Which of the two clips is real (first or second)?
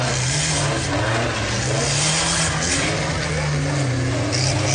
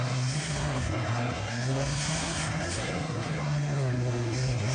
first